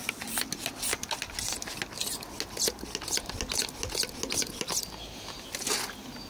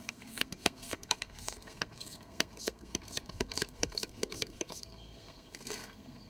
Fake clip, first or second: second